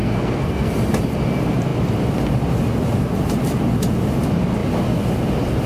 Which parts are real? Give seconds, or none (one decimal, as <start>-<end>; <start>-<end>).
0.7-5.7